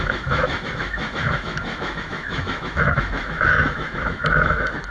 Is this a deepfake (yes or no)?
yes